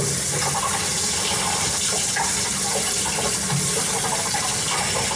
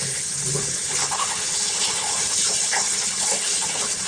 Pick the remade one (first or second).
second